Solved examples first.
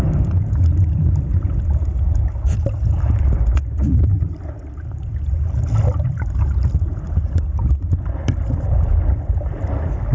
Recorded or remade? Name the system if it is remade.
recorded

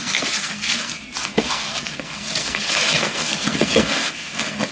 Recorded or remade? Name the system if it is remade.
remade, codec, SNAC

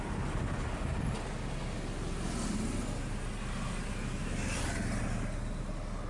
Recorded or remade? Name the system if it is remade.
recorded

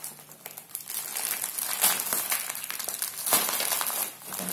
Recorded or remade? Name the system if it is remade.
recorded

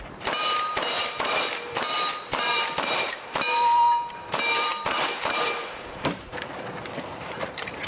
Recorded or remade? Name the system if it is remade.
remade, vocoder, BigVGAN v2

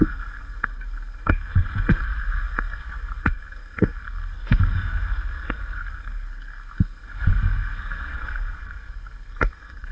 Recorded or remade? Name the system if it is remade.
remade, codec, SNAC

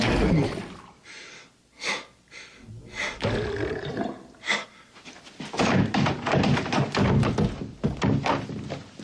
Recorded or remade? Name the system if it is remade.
recorded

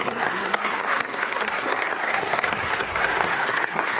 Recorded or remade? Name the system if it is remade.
remade, codec, SNAC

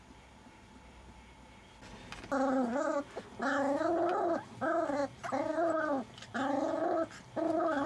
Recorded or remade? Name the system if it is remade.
recorded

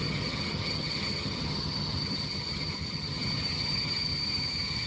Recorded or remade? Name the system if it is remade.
remade, vocoder, HiFi-GAN